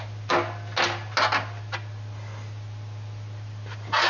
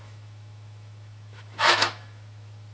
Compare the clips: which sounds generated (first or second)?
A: second